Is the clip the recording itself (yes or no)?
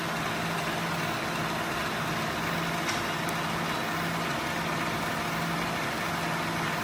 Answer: yes